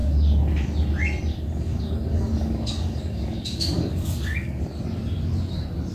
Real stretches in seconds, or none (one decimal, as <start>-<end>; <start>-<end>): 0.0-1.3; 4.6-5.9